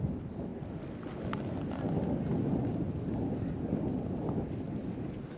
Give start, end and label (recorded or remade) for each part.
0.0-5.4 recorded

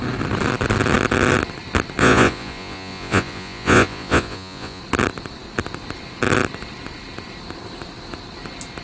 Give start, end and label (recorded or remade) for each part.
0.0-2.0 recorded; 2.0-4.8 remade; 4.8-8.8 recorded